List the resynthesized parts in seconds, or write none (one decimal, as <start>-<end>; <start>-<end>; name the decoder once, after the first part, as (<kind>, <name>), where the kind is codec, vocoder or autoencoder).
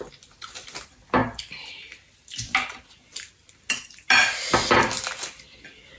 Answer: none